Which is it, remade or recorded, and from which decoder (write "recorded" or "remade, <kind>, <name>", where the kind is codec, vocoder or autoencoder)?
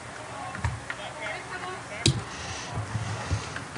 recorded